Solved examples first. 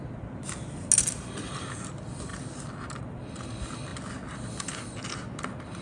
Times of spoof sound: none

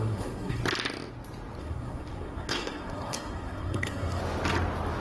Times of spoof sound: 0.0-0.6 (codec, SNAC); 1.6-4.2